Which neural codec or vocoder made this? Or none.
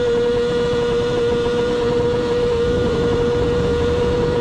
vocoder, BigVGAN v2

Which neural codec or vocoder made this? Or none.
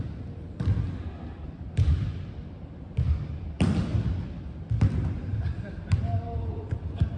none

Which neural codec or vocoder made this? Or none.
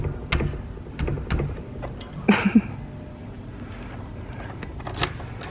none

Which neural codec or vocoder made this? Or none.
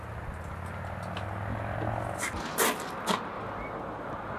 none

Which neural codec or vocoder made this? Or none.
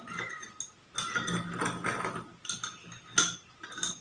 none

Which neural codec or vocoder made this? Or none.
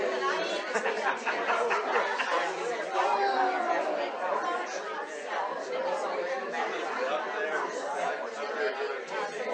vocoder, BigVGAN v2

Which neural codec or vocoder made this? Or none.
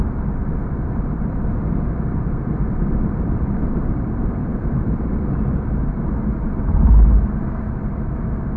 vocoder, BigVGAN v2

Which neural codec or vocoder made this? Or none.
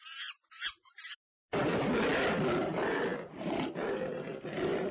vocoder, BigVGAN v2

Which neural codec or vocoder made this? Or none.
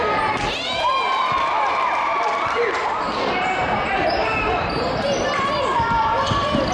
vocoder, BigVGAN v2